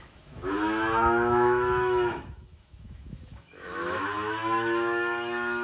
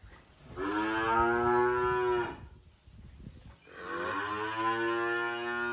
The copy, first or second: first